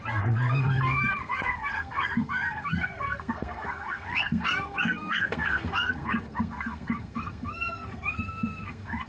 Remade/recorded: remade